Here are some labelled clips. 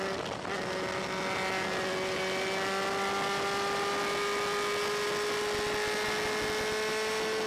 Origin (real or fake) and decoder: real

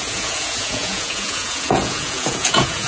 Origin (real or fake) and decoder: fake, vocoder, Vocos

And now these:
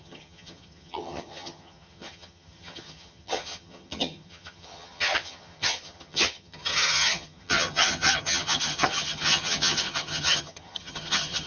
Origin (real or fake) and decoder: fake, vocoder, HiFi-GAN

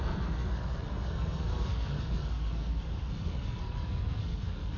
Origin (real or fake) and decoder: fake, codec, SNAC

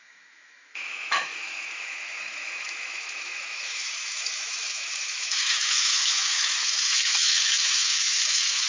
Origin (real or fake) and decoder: fake, autoencoder, DAC-VAE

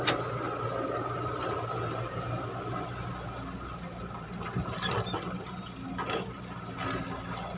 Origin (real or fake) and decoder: real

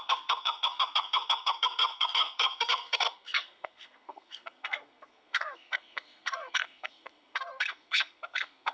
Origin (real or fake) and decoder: fake, codec, SNAC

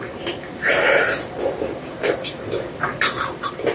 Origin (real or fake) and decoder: fake, vocoder, BigVGAN v2